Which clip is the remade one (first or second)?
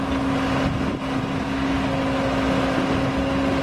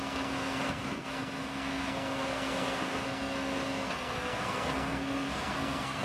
second